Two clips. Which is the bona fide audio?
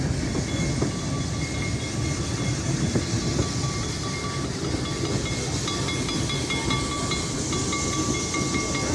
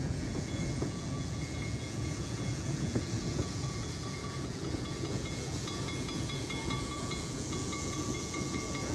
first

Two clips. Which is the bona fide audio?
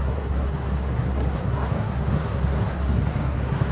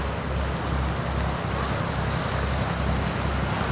second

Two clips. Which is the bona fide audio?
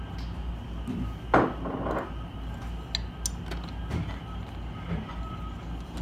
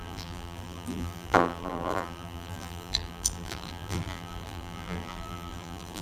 first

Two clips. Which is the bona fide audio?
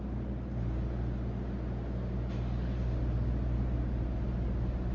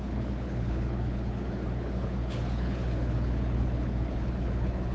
first